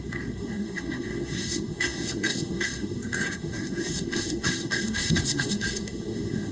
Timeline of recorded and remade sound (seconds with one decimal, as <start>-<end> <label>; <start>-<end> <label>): 0.0-6.5 remade